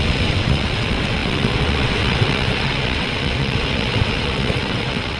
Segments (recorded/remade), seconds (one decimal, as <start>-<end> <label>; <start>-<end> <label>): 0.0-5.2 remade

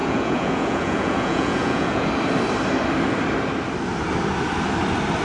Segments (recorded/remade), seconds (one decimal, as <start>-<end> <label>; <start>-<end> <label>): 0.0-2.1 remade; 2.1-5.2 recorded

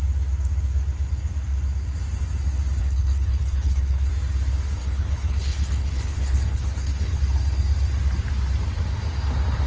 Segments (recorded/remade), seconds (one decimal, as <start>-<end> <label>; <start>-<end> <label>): 0.0-2.8 recorded; 2.8-4.1 remade; 4.1-4.8 recorded; 4.8-7.2 remade; 7.2-9.7 recorded